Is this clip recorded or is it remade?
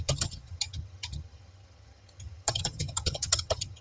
remade